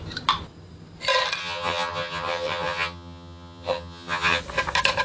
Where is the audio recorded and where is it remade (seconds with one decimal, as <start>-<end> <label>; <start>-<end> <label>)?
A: 0.0-1.4 recorded; 1.4-4.4 remade; 4.4-5.0 recorded

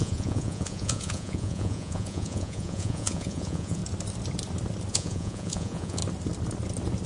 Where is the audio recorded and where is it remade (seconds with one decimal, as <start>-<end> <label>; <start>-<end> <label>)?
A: 0.0-3.8 remade; 3.8-4.9 recorded; 4.9-6.0 remade; 6.0-7.1 recorded

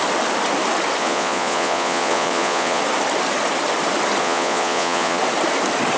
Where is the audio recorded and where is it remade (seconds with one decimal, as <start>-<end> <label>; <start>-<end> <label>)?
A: 0.0-1.0 recorded; 1.0-2.8 remade; 2.8-4.2 recorded; 4.2-5.2 remade; 5.2-6.0 recorded

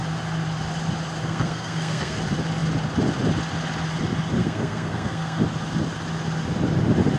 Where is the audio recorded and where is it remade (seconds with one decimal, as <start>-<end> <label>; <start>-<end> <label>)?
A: 0.0-1.2 recorded; 1.2-2.2 remade; 2.2-4.4 recorded; 4.4-5.4 remade; 5.4-7.2 recorded